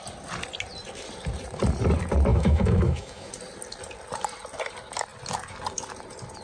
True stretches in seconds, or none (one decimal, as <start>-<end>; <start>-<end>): 0.0-2.3; 3.3-6.4